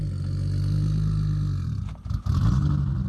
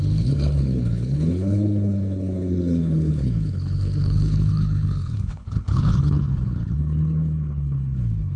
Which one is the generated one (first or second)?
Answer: second